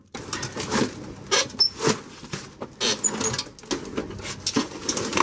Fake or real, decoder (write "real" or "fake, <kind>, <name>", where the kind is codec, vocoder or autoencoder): real